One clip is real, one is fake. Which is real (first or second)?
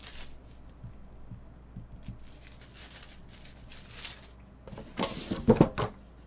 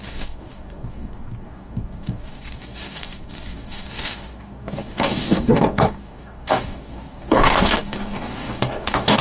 first